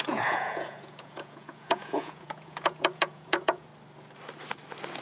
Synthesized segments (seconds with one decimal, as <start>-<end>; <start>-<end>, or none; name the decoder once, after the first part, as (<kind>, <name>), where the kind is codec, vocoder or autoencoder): 0.0-3.7 (vocoder, Vocos)